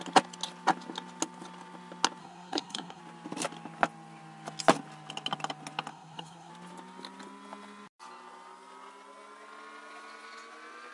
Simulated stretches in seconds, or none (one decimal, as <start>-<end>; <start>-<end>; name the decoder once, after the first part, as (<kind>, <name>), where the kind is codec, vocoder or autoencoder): 2.2-3.0 (codec, SNAC); 5.9-6.5